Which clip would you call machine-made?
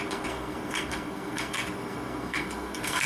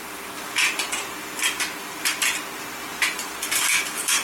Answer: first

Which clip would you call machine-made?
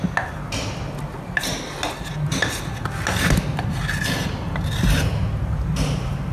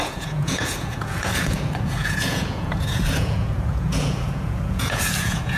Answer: second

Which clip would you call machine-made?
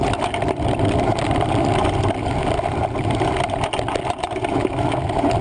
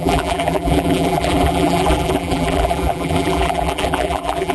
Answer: second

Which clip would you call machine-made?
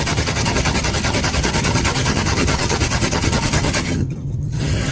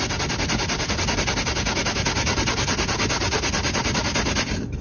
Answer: first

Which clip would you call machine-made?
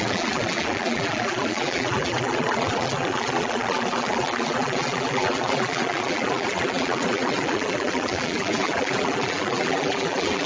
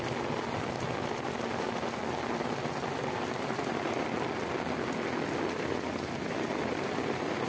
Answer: first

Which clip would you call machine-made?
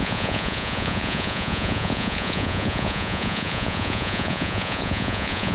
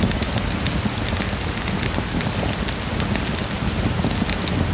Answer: first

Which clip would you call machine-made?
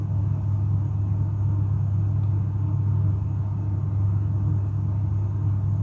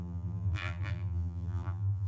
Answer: second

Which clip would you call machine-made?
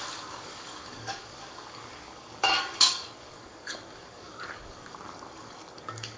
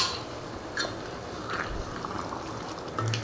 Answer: first